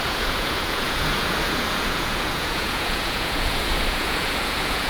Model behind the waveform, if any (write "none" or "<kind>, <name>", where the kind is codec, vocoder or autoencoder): vocoder, Vocos